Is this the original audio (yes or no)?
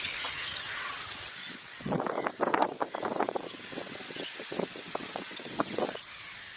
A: no